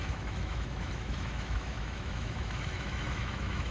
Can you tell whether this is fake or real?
fake